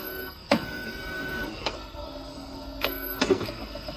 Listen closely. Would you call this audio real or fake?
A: fake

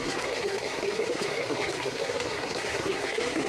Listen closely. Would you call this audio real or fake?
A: fake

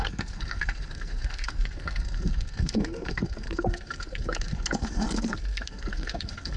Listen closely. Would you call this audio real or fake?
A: fake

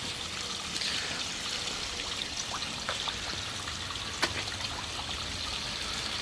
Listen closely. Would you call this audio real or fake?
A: real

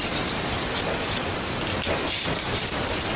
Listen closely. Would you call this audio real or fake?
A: real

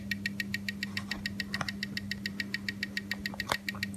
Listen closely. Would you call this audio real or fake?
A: real